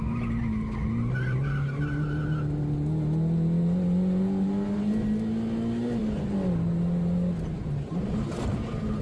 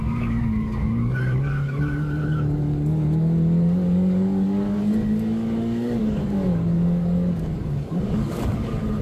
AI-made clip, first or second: second